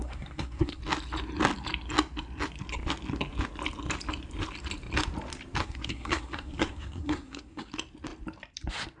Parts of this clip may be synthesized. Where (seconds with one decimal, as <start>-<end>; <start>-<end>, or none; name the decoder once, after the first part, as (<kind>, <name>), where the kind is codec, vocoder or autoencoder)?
0.0-0.8 (codec, SNAC); 5.6-7.7